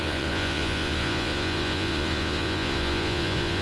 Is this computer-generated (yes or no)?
yes